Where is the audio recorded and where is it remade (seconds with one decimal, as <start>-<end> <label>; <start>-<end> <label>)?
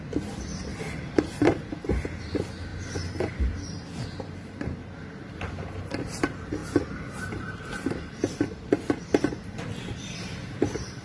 0.0-2.7 remade; 2.7-3.6 recorded; 3.6-11.0 remade